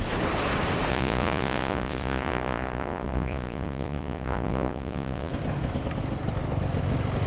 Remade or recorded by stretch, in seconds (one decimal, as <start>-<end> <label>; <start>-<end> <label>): 0.0-0.9 recorded; 0.9-5.3 remade; 5.3-7.3 recorded